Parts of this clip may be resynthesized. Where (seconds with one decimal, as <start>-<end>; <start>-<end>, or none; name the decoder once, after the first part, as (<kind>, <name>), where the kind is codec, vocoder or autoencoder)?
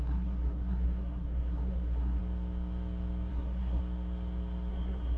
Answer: 0.0-2.2 (codec, SNAC); 3.3-3.8; 4.7-5.2